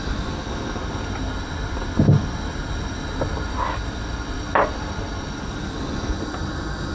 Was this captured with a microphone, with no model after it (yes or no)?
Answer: yes